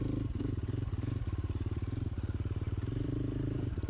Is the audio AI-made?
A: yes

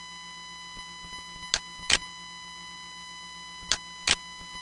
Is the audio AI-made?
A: no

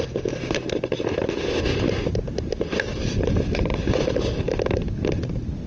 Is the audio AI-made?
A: no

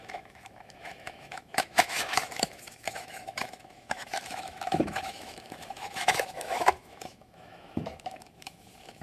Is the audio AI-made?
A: yes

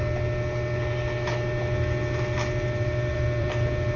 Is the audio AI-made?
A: yes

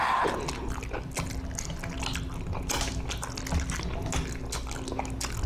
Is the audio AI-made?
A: no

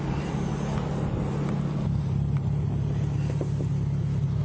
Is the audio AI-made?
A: no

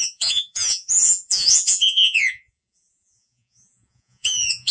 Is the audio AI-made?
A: yes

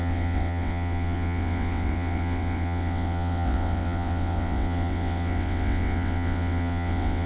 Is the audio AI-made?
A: yes